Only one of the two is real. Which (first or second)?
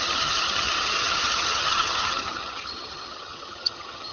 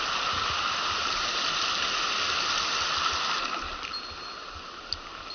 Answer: second